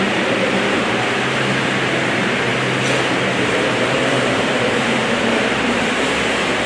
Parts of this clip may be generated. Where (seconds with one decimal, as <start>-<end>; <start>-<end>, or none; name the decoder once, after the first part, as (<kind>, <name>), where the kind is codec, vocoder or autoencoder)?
0.0-2.5 (vocoder, BigVGAN v2); 3.5-5.0; 5.6-6.7

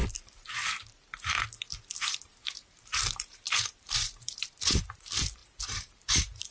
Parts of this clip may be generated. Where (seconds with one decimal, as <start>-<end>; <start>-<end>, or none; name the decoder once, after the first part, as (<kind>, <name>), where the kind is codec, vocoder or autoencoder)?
2.3-4.8 (vocoder, BigVGAN v2); 5.4-6.5